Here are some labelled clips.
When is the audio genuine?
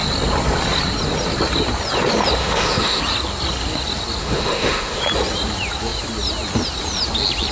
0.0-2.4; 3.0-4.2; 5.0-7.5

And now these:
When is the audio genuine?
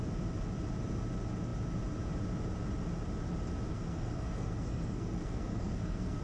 0.0-3.7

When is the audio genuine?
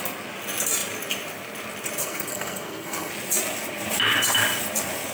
0.0-2.0; 3.1-5.1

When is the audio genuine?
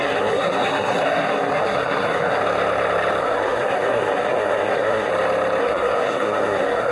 2.4-3.2; 5.1-5.6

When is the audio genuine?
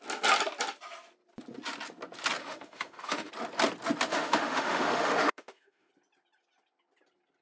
0.0-2.4; 3.3-4.1; 5.9-7.4